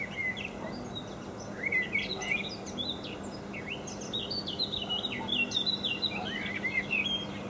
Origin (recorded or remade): recorded